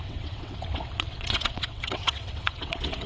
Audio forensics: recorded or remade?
remade